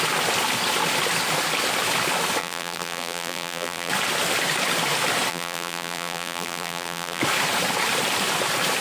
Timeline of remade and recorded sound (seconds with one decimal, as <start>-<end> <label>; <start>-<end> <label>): 0.0-2.4 recorded; 2.4-3.9 remade; 3.9-5.3 recorded; 5.3-7.2 remade; 7.2-8.8 recorded